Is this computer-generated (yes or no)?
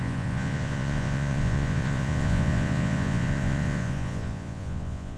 yes